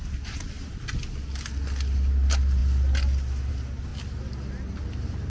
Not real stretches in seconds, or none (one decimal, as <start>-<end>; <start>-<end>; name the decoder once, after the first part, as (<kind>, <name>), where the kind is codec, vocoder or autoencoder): none